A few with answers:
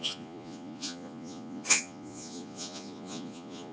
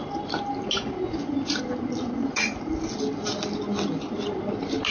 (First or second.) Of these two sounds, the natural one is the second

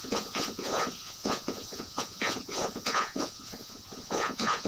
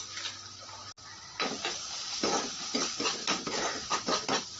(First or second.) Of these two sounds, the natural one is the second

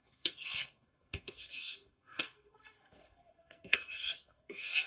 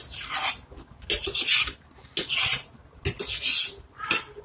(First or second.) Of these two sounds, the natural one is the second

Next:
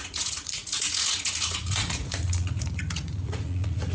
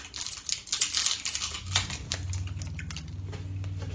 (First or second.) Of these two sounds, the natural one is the second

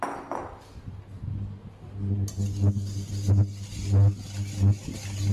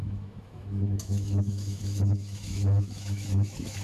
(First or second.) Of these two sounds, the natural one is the first